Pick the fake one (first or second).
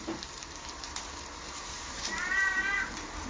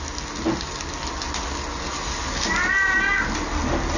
first